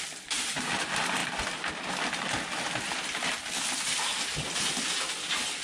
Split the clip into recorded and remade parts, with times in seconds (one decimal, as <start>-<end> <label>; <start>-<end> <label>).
0.0-5.6 recorded